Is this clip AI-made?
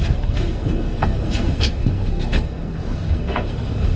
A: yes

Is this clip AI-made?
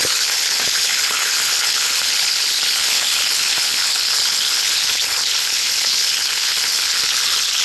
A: yes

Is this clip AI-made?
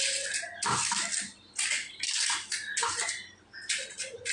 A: no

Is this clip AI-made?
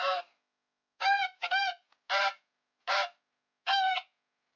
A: no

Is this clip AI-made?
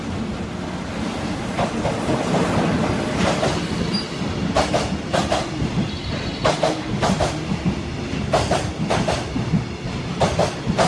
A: no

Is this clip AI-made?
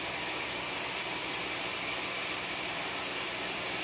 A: yes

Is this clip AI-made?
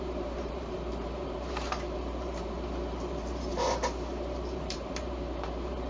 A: yes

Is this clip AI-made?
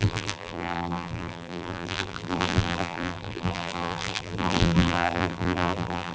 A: yes